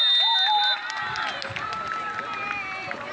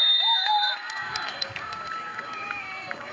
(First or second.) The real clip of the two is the first